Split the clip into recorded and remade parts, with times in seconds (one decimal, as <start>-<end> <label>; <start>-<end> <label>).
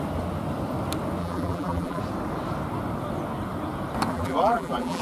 0.0-1.2 recorded; 1.2-2.0 remade; 2.0-4.1 recorded; 4.1-5.0 remade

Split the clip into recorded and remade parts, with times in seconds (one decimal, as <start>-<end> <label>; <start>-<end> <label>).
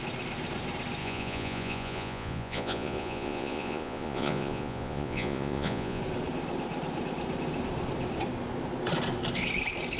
0.0-1.0 recorded; 1.0-6.0 remade; 6.0-10.0 recorded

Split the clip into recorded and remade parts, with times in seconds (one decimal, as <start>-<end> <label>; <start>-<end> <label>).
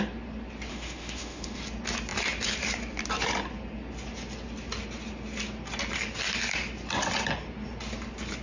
0.0-0.7 recorded; 0.7-1.6 remade; 1.6-8.4 recorded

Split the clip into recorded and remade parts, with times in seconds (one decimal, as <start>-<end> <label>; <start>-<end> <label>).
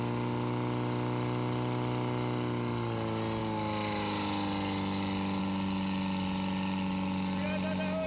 0.0-8.1 recorded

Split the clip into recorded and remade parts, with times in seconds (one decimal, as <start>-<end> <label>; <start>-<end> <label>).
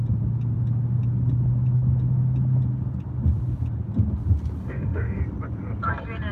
0.0-4.6 recorded; 4.6-5.2 remade; 5.2-6.3 recorded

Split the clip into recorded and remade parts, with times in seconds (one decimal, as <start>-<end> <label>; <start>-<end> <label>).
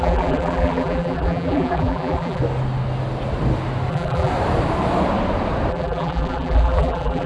0.0-2.4 remade; 2.4-3.9 recorded; 3.9-4.3 remade; 4.3-5.7 recorded; 5.7-7.3 remade